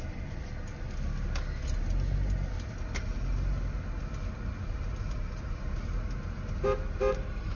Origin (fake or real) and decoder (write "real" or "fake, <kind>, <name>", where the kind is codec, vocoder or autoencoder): real